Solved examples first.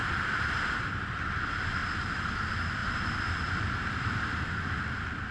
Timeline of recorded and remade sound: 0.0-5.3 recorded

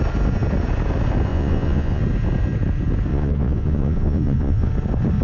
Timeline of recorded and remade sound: 0.0-1.3 recorded; 1.3-2.0 remade; 2.0-3.1 recorded; 3.1-4.7 remade; 4.7-5.2 recorded

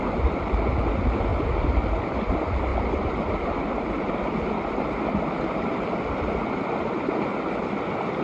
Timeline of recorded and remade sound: 0.0-8.2 recorded

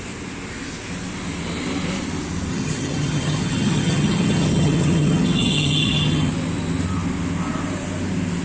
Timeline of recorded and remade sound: 0.0-2.5 recorded; 2.5-6.3 remade; 6.3-8.4 recorded

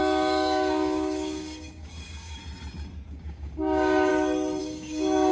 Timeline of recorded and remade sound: 0.0-2.4 remade; 2.4-3.1 recorded; 3.1-4.1 remade; 4.1-4.6 recorded; 4.6-5.3 remade

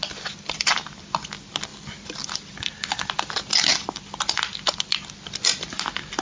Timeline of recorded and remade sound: 0.0-1.7 recorded; 1.7-5.0 remade; 5.0-6.2 recorded

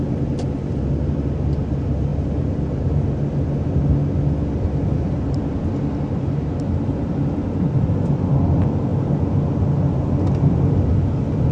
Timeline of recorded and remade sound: 0.0-11.5 recorded